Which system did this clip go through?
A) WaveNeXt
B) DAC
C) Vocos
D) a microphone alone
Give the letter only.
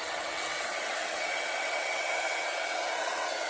A